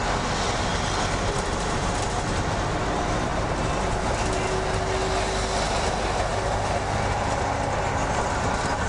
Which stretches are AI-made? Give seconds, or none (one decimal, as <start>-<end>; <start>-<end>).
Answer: none